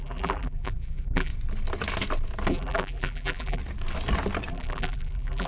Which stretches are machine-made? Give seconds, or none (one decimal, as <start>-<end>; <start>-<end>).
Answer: 0.0-1.3; 2.5-3.6; 4.5-5.5